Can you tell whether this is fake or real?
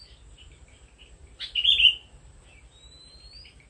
real